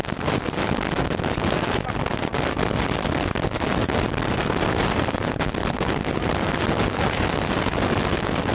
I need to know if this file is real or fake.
real